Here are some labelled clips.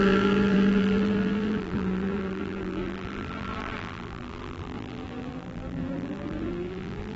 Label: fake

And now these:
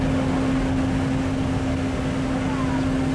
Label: real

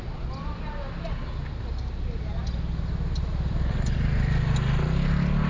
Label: real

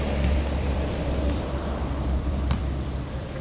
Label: fake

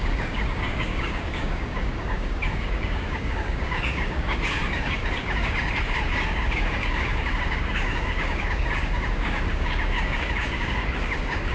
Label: fake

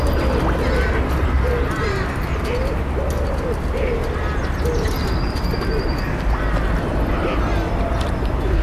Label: real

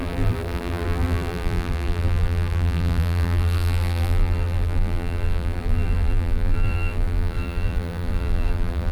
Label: fake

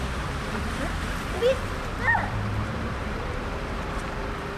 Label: fake